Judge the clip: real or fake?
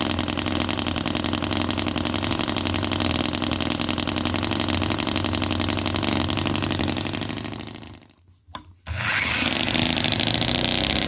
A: real